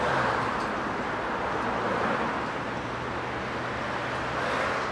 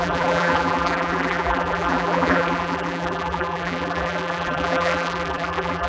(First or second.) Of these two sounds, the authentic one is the first